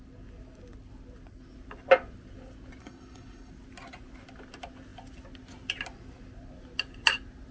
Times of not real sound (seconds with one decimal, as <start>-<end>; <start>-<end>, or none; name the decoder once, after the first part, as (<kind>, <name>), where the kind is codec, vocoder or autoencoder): 2.8-3.5 (codec, HILCodec)